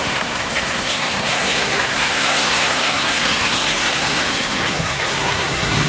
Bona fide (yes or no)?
no